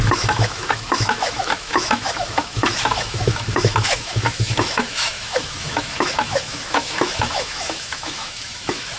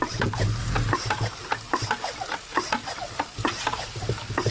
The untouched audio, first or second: second